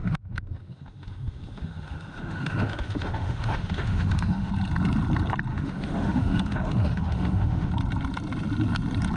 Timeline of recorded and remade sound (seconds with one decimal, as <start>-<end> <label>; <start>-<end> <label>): 0.0-4.5 remade; 4.5-5.5 recorded; 5.5-7.7 remade; 7.7-9.2 recorded